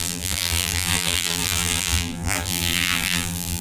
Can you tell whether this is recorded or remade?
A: remade